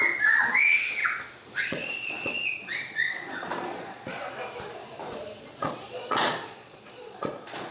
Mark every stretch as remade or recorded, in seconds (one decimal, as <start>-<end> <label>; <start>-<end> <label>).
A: 0.0-1.0 remade; 1.0-1.6 recorded; 1.6-4.2 remade; 4.2-5.4 recorded; 5.4-7.7 remade